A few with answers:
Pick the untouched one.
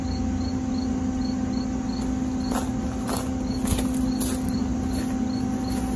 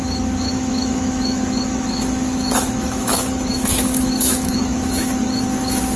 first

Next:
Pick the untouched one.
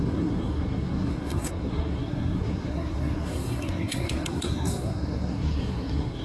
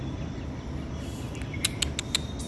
second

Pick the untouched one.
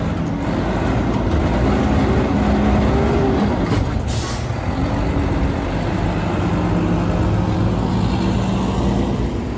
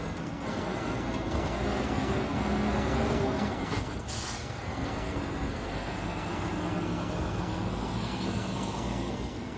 first